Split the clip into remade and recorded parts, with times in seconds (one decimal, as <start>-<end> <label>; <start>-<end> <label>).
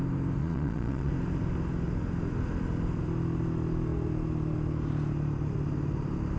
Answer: 0.0-0.4 recorded; 0.4-1.1 remade; 1.1-6.4 recorded